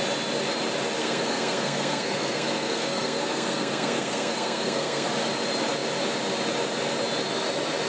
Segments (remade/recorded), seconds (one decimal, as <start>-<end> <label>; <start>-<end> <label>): 0.0-1.0 recorded; 1.0-5.1 remade; 5.1-7.9 recorded